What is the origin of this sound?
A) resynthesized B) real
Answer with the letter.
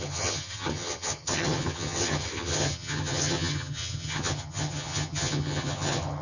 A